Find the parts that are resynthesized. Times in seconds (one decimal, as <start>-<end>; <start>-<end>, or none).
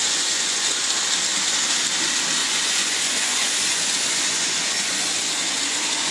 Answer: 0.0-0.9; 2.4-6.1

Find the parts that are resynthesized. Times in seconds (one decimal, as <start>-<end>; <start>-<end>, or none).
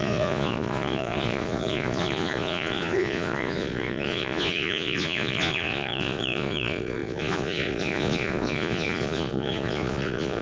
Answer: 0.0-10.4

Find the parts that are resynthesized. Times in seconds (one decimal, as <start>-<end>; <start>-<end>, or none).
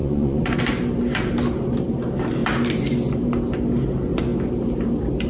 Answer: 0.0-0.6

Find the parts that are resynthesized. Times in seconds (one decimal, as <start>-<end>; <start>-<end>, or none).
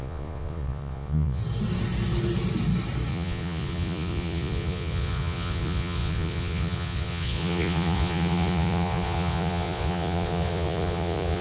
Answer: 0.0-1.4; 3.1-11.4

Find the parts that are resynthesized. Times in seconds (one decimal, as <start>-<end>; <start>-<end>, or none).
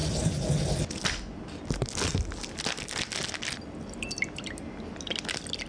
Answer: none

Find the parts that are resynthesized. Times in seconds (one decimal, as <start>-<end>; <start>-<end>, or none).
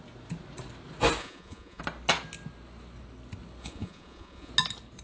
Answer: 1.2-1.8; 3.6-4.5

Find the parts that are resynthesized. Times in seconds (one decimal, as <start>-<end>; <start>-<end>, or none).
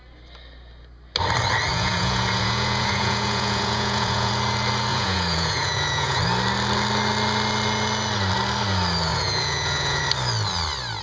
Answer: 1.7-4.3; 4.9-6.2; 9.1-10.0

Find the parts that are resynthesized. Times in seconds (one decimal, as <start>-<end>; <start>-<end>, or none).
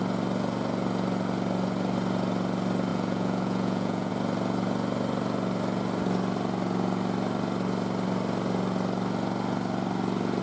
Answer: 2.9-4.1